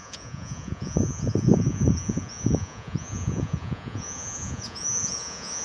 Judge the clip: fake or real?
fake